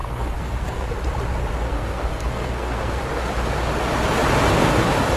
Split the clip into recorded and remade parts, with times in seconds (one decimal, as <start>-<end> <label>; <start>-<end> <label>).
0.0-0.9 remade; 0.9-1.6 recorded; 1.6-3.0 remade; 3.0-5.2 recorded